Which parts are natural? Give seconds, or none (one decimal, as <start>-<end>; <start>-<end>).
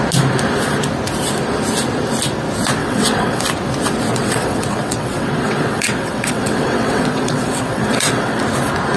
0.0-2.8; 3.4-4.1; 8.4-9.0